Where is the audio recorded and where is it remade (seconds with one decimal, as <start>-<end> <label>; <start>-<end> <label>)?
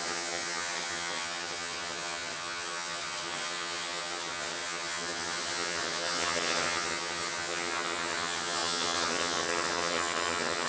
0.0-10.7 remade